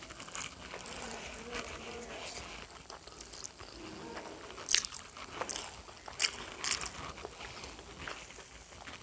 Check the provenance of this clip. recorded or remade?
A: recorded